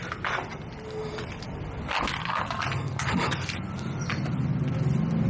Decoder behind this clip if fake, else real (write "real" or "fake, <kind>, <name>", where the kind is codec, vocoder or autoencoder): real